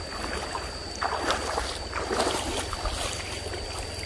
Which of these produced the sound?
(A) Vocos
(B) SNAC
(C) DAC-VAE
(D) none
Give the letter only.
D